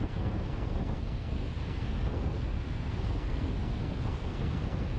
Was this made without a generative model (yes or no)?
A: no